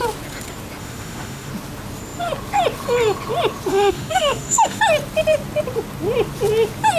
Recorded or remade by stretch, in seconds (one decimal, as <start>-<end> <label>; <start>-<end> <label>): 0.0-0.8 recorded; 0.8-1.5 remade; 1.5-3.7 recorded; 3.7-4.8 remade; 4.8-7.0 recorded